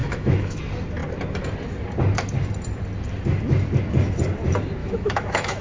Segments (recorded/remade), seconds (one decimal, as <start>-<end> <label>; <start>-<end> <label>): 0.0-0.6 remade; 0.6-4.8 recorded; 4.8-5.6 remade